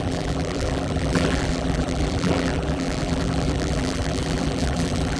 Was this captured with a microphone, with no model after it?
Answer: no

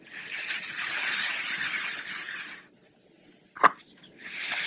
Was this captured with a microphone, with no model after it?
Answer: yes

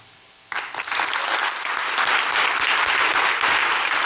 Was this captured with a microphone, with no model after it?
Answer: yes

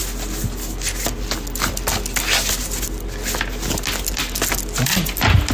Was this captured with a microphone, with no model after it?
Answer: yes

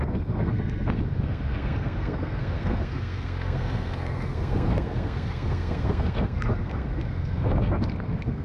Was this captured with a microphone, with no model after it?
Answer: no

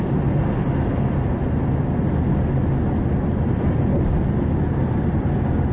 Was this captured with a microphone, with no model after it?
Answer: yes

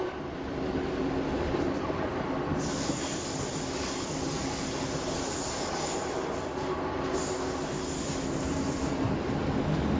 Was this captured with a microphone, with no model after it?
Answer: yes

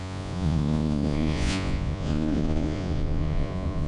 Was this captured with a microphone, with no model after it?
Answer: no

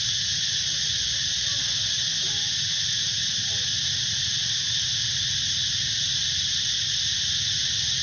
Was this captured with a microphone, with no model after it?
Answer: yes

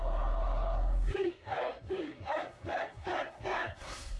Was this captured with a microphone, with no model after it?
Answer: no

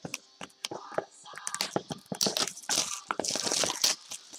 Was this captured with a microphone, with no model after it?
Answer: yes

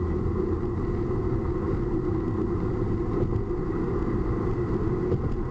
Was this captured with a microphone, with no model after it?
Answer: yes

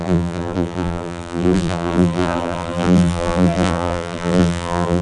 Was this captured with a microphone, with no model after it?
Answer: no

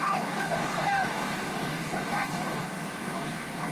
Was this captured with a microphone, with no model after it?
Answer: no